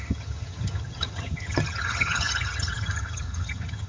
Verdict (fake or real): fake